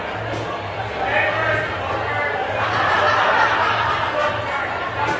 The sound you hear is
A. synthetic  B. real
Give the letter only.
B